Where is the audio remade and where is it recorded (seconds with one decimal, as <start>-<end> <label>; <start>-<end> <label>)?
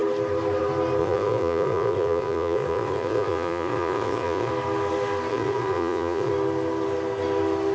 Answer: 0.0-1.0 recorded; 1.0-4.5 remade; 4.5-5.3 recorded; 5.3-6.3 remade; 6.3-7.7 recorded